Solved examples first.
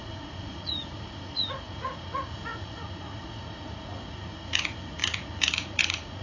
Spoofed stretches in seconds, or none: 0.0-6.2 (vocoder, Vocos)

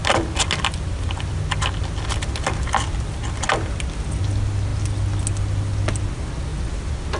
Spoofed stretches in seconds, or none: none

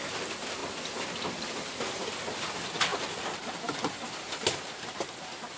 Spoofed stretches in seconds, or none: 0.0-0.6 (vocoder, BigVGAN v2); 1.3-5.6

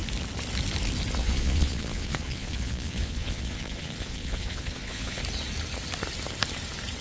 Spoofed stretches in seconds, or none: 1.2-5.2 (vocoder, Vocos)

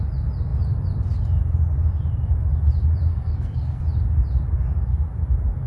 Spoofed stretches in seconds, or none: 3.1-3.8 (codec, SNAC)

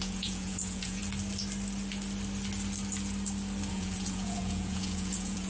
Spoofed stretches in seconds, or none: 0.0-1.0 (vocoder, Vocos); 3.7-5.5